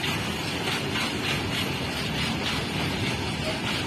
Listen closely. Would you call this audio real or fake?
real